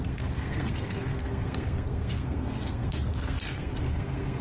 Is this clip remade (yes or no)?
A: yes